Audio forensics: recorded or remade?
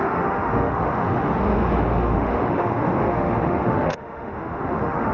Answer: remade